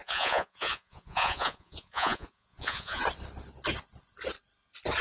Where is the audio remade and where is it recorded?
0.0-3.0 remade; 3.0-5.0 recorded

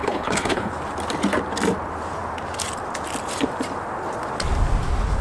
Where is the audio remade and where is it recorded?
0.0-0.7 remade; 0.7-5.2 recorded

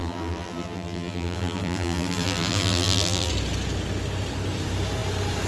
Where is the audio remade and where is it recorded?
0.0-3.3 remade; 3.3-5.5 recorded

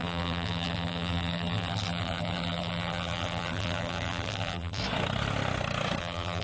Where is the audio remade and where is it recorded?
0.0-4.8 remade; 4.8-6.0 recorded; 6.0-6.4 remade

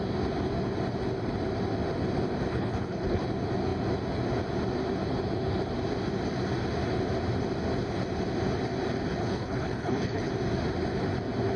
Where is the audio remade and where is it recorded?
0.0-2.5 recorded; 2.5-3.2 remade; 3.2-9.2 recorded; 9.2-10.3 remade; 10.3-11.6 recorded